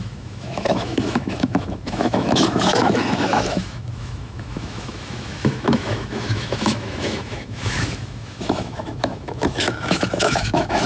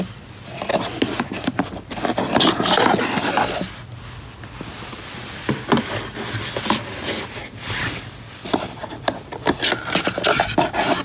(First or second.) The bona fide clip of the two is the second